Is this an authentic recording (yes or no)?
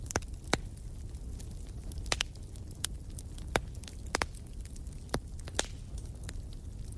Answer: yes